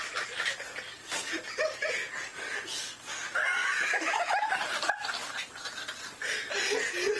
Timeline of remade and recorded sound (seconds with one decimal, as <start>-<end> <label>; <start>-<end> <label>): 0.0-3.6 recorded; 3.6-4.4 remade; 4.4-7.2 recorded